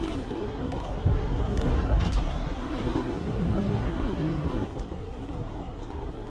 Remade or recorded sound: remade